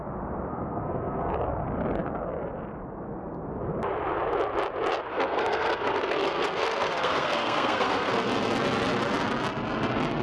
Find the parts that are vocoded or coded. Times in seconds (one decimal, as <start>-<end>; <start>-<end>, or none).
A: 0.5-1.3; 5.1-8.1